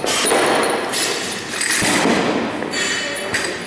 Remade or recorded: recorded